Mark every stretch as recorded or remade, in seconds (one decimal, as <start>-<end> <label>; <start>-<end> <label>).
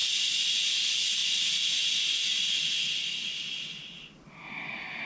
0.0-5.1 recorded